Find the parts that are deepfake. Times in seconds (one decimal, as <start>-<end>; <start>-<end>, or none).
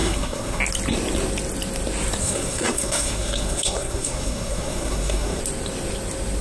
0.0-0.6; 2.2-5.4